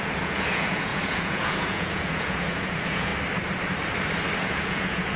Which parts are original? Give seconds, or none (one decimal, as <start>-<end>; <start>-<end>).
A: 3.1-4.4